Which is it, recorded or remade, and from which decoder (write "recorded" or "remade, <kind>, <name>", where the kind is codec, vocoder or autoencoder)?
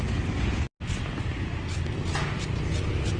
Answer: recorded